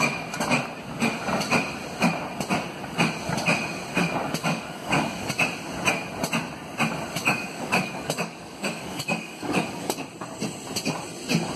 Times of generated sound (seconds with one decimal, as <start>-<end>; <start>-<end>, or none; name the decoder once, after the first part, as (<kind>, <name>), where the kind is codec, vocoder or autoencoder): 4.4-5.4 (codec, DAC); 7.2-10.0